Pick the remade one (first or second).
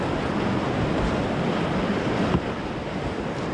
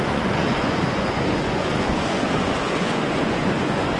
second